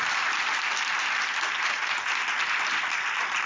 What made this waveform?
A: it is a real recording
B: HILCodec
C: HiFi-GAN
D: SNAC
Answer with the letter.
A